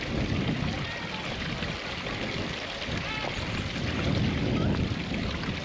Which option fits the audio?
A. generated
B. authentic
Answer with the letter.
B